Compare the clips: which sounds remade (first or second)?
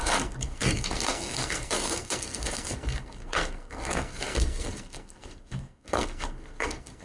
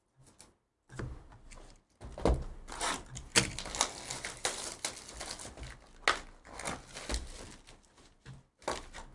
first